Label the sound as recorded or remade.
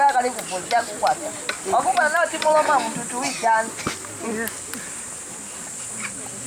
recorded